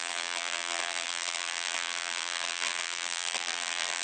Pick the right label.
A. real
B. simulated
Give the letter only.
B